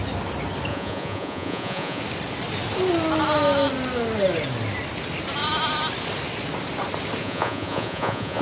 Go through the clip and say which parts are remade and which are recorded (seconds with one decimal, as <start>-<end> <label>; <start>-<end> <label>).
0.0-0.7 recorded; 0.7-2.0 remade; 2.0-7.2 recorded; 7.2-8.4 remade